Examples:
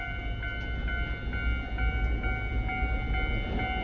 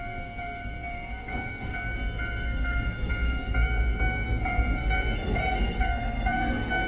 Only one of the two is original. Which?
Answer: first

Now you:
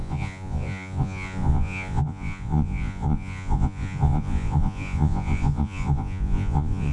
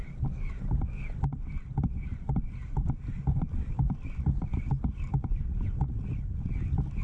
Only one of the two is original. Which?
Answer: second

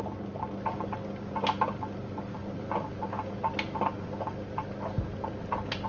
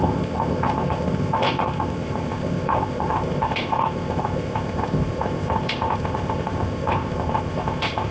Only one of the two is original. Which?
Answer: first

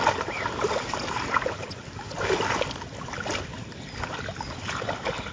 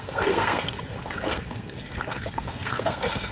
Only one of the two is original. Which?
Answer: first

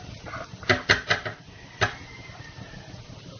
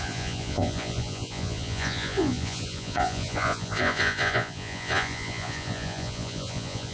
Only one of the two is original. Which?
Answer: first